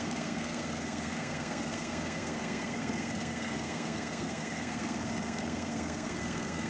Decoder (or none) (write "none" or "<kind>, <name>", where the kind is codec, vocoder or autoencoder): codec, SNAC